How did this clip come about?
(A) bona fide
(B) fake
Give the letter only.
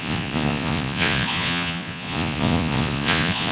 B